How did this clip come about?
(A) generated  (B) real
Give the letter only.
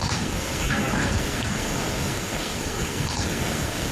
A